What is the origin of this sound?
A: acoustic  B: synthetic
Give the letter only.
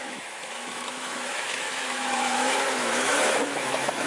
B